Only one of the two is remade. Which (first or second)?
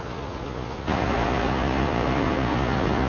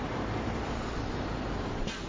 first